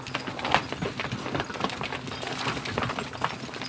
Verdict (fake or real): real